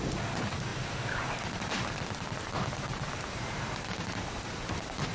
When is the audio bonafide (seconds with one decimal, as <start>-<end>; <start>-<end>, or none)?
0.0-1.8